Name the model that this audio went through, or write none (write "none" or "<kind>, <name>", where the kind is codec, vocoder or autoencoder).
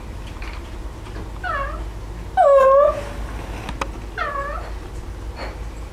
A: none